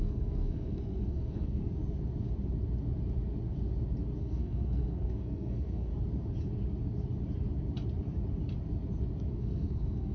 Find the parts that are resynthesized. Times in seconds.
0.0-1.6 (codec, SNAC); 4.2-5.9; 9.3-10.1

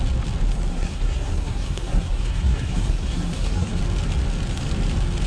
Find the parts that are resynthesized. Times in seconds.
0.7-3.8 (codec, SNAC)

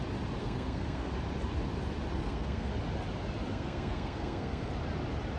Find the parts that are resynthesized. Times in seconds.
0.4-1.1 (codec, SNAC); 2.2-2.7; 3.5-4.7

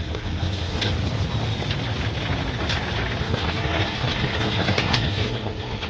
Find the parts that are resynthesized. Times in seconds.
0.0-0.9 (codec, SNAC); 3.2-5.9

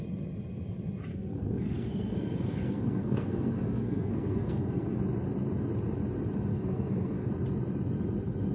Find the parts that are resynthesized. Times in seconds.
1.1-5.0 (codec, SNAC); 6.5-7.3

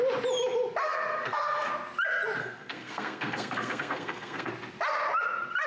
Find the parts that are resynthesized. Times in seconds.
0.8-1.7 (codec, SNAC); 2.4-4.5